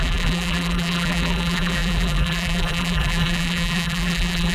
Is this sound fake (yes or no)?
yes